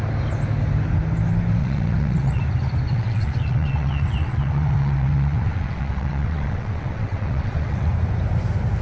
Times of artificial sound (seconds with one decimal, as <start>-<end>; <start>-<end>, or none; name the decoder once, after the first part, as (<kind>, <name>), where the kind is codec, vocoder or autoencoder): 1.6-2.4 (vocoder, WaveNeXt); 2.9-7.9

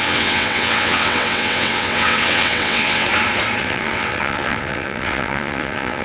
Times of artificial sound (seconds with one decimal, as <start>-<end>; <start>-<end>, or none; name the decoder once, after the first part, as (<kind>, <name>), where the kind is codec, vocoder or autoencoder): 0.0-3.1 (vocoder, WaveNeXt); 3.6-6.0

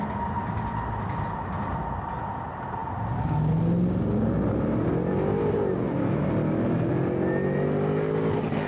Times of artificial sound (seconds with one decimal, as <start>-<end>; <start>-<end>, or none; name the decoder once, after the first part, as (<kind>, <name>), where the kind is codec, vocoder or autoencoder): none

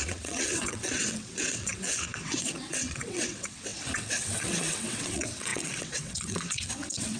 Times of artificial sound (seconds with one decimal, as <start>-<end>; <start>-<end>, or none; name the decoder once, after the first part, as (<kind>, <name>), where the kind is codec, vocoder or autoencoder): 0.0-7.2 (vocoder, WaveNeXt)

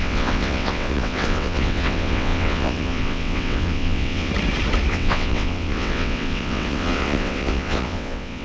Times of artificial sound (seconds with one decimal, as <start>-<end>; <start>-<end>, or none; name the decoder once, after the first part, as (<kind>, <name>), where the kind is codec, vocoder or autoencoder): 0.0-4.3 (vocoder, WaveNeXt); 4.9-8.4

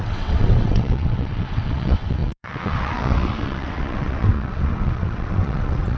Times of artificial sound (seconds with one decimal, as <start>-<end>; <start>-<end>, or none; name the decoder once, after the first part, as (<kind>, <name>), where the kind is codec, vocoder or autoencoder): 0.0-6.0 (vocoder, WaveNeXt)

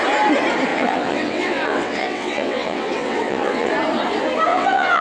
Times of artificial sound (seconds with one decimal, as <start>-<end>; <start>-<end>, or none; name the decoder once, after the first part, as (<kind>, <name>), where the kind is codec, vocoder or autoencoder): 0.7-3.7 (vocoder, WaveNeXt); 4.5-5.0

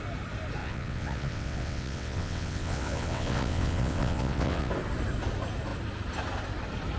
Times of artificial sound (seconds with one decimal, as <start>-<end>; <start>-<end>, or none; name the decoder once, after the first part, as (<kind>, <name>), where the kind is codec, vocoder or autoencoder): 0.6-4.7 (vocoder, WaveNeXt)